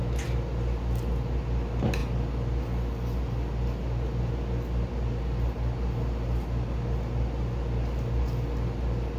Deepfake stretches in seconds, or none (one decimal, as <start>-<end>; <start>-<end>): none